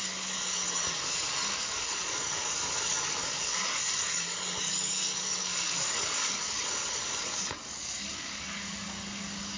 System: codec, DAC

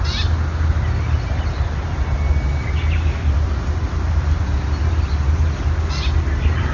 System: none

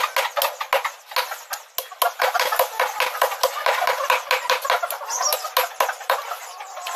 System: none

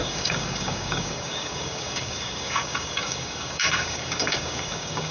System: codec, DAC